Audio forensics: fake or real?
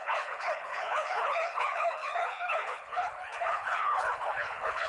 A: fake